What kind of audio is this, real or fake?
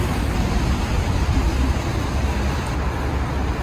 real